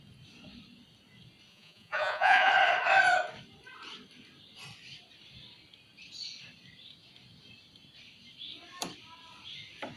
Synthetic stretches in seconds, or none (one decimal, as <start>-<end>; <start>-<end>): 1.5-2.5